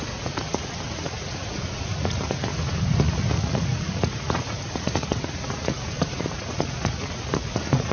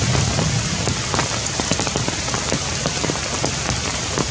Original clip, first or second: second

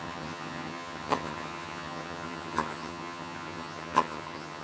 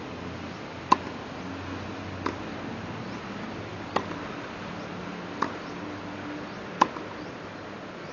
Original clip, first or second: second